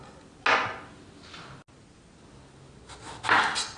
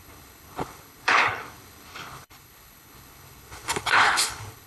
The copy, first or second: second